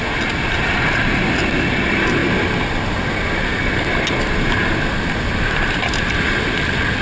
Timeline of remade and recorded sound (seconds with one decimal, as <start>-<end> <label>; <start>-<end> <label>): 0.0-7.0 recorded